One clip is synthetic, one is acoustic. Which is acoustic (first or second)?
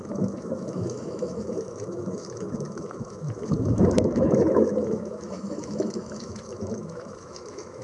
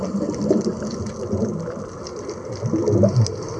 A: second